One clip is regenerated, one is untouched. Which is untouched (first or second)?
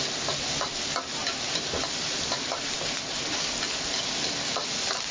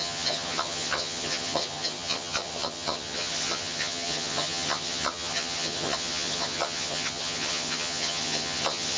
first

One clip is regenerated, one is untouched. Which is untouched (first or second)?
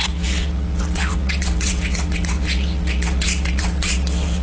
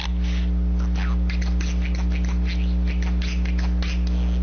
second